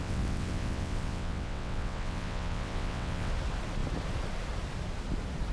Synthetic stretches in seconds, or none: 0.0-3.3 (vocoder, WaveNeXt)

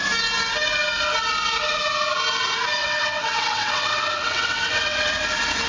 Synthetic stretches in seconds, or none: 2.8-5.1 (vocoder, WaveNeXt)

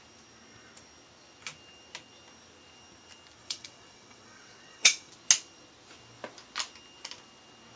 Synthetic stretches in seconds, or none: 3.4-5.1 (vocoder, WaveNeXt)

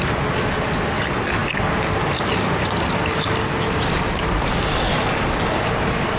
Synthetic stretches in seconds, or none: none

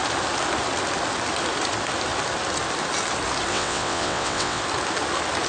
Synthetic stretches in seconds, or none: 3.5-4.6 (vocoder, WaveNeXt)

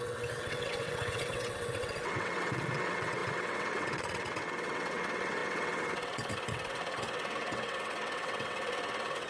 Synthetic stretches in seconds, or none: 0.0-9.3 (vocoder, WaveNeXt)

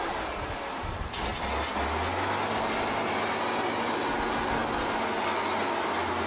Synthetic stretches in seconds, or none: none